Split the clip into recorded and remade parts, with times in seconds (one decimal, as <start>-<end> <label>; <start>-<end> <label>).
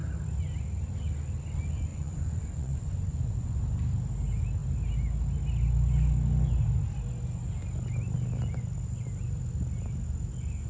0.0-1.9 recorded; 1.9-3.6 remade; 3.6-10.7 recorded